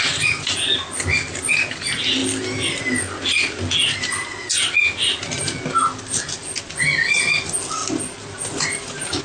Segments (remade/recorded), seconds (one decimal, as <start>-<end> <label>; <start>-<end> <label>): 0.0-9.2 recorded

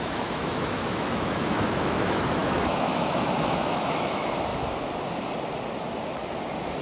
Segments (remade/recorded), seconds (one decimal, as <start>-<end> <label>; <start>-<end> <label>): 0.0-4.5 remade; 4.5-6.8 recorded

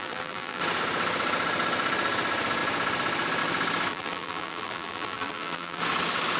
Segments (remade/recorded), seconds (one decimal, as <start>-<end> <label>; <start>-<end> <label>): 0.0-0.6 remade; 0.6-3.9 recorded; 3.9-5.8 remade; 5.8-6.4 recorded

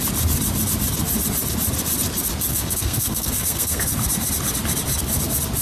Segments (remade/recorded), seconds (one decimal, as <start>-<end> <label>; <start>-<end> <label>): 0.0-2.5 recorded; 2.5-3.8 remade; 3.8-5.6 recorded

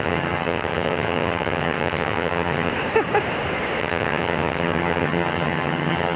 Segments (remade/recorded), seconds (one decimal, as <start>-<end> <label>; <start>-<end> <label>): 0.0-2.7 remade; 2.7-3.8 recorded; 3.8-6.2 remade

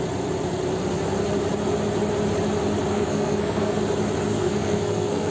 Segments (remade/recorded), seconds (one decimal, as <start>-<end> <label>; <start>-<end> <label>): 0.0-2.9 recorded; 2.9-3.8 remade; 3.8-4.3 recorded; 4.3-5.3 remade

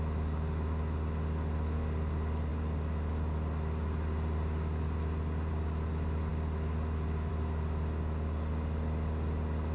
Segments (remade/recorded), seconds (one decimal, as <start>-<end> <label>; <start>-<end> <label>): 0.0-9.7 recorded